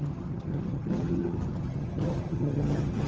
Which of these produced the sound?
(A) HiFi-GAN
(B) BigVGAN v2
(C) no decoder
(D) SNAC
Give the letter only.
A